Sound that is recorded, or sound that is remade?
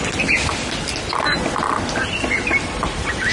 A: recorded